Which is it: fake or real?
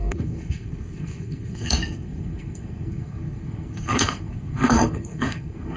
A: fake